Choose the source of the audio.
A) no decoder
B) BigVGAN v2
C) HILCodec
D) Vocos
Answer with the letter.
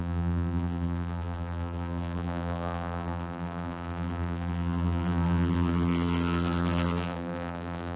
B